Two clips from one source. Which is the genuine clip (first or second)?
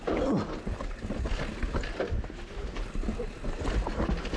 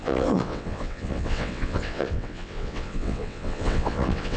first